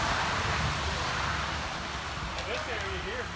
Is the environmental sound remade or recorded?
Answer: recorded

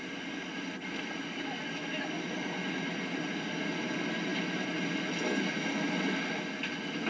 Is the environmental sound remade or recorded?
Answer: recorded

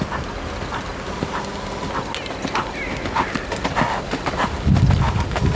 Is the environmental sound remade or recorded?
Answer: recorded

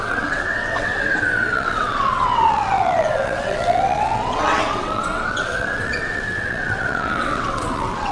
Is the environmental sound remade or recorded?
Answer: remade